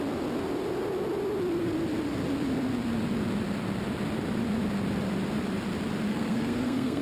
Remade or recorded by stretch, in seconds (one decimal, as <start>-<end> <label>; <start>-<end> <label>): 0.0-6.1 recorded; 6.1-7.0 remade